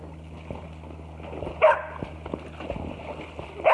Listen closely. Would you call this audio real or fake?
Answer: real